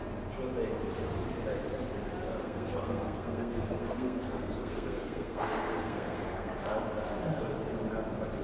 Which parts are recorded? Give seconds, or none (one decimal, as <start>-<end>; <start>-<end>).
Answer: 0.0-2.4; 6.5-8.4